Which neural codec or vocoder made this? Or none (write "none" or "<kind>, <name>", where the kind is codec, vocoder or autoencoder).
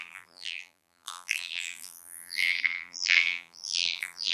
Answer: vocoder, BigVGAN v2